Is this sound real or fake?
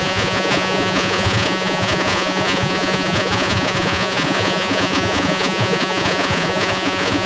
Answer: fake